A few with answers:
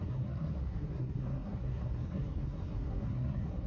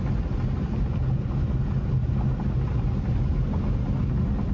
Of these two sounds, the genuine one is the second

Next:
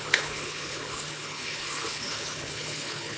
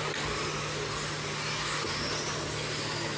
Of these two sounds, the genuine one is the second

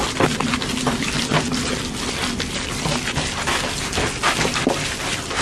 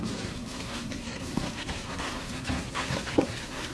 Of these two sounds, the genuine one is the first